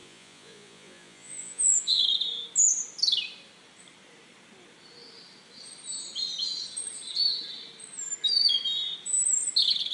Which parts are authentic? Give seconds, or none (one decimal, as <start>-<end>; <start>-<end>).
2.0-9.9